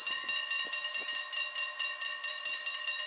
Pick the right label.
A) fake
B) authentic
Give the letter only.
B